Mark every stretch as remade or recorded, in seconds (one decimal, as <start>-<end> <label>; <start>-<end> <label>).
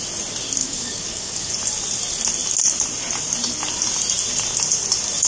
0.0-0.6 recorded; 0.6-1.5 remade; 1.5-5.3 recorded